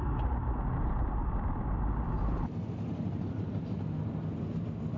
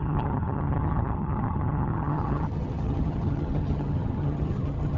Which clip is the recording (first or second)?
first